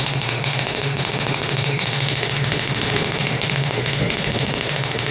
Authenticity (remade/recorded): remade